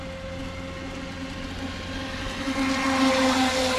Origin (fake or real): real